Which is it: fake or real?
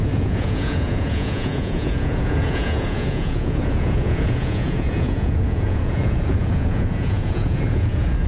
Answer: fake